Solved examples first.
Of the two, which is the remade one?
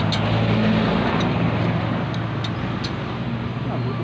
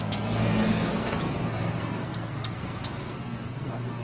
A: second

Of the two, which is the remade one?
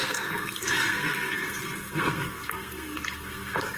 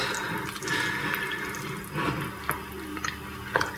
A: first